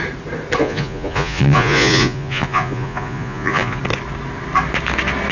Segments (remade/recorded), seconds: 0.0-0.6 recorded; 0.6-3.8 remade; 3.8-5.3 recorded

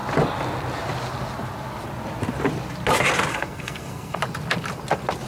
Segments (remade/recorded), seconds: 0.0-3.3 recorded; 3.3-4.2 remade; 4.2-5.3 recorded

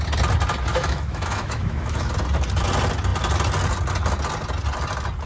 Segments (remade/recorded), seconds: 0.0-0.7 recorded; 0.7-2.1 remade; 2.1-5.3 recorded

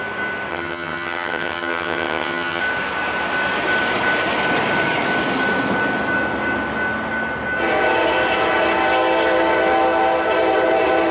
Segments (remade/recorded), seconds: 0.0-0.5 recorded; 0.5-2.6 remade; 2.6-11.1 recorded

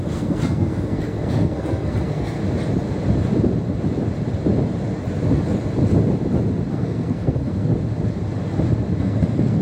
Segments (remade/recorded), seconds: 0.0-2.4 remade; 2.4-6.7 recorded; 6.7-7.7 remade; 7.7-9.0 recorded; 9.0-9.6 remade